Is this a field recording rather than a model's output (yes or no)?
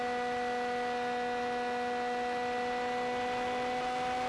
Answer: yes